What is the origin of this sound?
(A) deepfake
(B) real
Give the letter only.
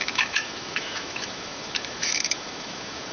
A